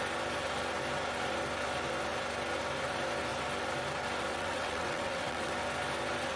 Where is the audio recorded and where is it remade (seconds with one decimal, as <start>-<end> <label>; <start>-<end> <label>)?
0.0-4.3 recorded; 4.3-5.5 remade; 5.5-6.4 recorded